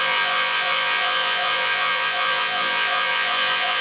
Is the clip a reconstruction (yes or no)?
yes